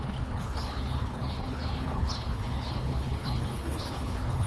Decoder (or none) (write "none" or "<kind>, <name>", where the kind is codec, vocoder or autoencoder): codec, HILCodec